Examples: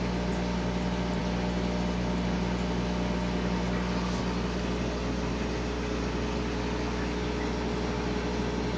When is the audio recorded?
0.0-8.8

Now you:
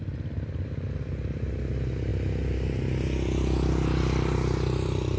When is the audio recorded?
0.0-5.2

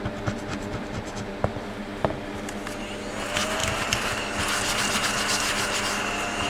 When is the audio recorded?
0.0-0.7; 1.8-3.6; 4.3-6.5

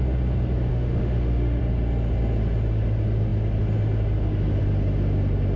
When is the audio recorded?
0.0-0.7; 1.6-5.6

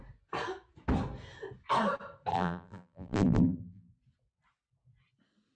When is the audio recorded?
0.0-2.3; 3.9-5.5

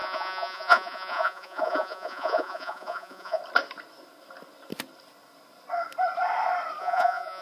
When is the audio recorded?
3.4-6.8

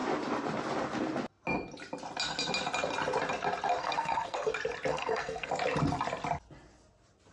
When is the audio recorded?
0.0-3.8; 4.5-4.9; 5.5-7.3

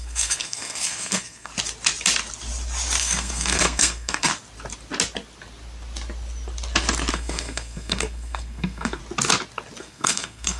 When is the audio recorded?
1.5-3.0; 4.3-7.1; 9.0-9.8